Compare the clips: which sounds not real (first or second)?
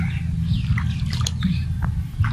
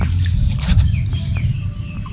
second